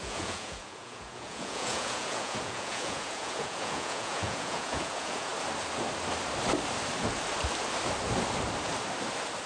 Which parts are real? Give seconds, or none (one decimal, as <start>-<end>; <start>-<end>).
5.3-9.5